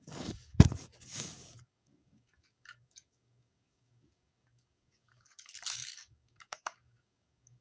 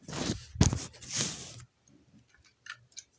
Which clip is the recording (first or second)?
second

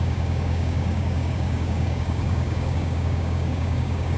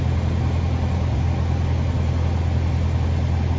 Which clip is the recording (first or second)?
second